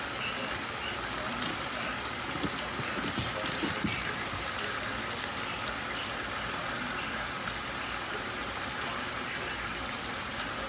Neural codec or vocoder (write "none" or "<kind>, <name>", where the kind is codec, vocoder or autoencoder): none